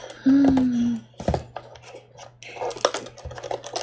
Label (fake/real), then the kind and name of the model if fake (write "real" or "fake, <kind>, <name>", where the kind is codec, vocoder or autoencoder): real